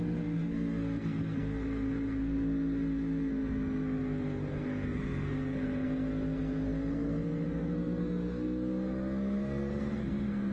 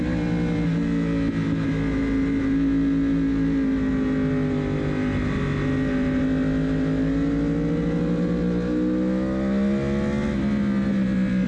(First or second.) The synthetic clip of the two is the first